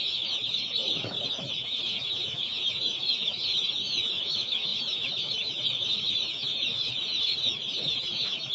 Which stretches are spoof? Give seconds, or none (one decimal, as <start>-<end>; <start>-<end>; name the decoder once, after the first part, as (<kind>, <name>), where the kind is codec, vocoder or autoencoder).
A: 0.0-8.5 (autoencoder, DAC-VAE)